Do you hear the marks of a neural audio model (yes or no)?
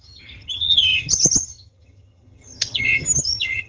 yes